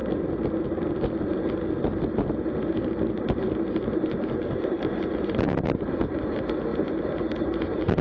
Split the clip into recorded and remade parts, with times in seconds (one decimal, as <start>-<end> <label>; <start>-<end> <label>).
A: 0.0-2.7 recorded; 2.7-5.9 remade; 5.9-8.0 recorded

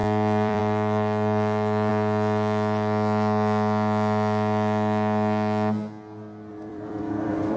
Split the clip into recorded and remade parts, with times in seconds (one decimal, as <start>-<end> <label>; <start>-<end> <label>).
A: 0.0-1.9 remade; 1.9-6.5 recorded; 6.5-7.6 remade

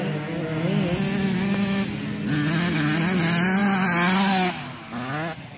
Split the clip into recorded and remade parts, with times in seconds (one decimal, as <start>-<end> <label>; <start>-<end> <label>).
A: 0.0-5.6 recorded

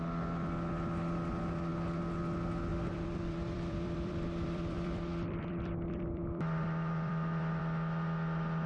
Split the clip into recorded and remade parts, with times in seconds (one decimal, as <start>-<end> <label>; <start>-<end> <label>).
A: 0.0-2.7 recorded; 2.7-7.6 remade; 7.6-8.7 recorded

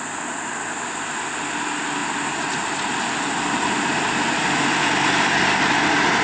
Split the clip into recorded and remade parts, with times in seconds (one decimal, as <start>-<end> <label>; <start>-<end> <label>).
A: 0.0-6.2 recorded

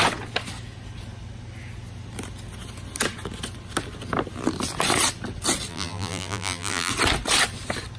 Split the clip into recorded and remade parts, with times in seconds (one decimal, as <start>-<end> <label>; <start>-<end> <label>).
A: 0.0-5.7 recorded; 5.7-6.9 remade; 6.9-8.0 recorded

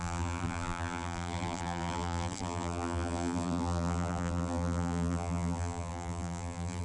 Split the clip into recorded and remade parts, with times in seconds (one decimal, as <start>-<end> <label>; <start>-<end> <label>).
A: 0.0-6.8 remade

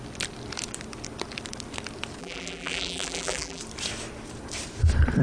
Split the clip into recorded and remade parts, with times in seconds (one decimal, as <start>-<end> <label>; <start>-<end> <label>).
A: 0.0-2.2 recorded; 2.2-3.6 remade; 3.6-5.2 recorded